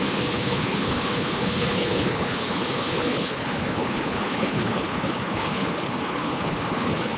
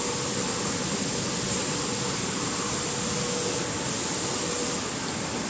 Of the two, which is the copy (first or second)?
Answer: first